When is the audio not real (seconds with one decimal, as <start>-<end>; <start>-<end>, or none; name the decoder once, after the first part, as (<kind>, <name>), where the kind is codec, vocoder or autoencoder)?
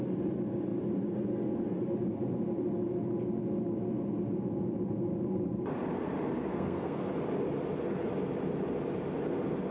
6.5-7.1 (codec, SNAC)